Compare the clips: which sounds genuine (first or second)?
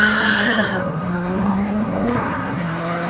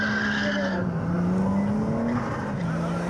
second